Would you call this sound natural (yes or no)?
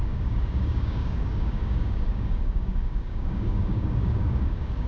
no